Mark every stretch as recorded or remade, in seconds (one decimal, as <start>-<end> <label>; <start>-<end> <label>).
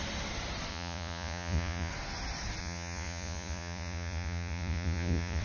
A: 0.0-0.7 recorded; 0.7-1.9 remade; 1.9-2.6 recorded; 2.6-5.4 remade